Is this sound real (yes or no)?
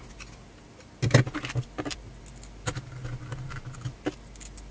yes